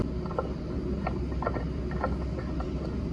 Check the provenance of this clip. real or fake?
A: real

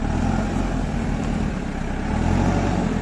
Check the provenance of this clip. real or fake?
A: real